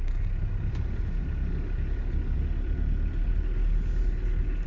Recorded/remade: recorded